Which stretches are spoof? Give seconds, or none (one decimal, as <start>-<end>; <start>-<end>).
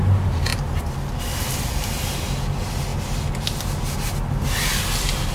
none